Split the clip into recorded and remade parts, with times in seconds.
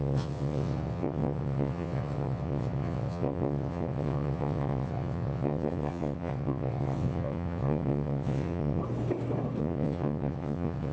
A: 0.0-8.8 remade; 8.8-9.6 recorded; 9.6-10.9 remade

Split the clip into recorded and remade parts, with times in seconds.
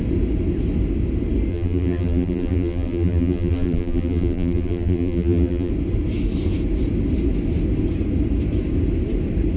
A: 0.0-1.5 recorded; 1.5-5.7 remade; 5.7-9.6 recorded